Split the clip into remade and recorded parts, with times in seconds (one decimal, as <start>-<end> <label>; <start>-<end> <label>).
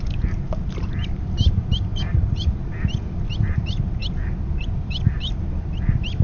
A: 0.0-6.2 recorded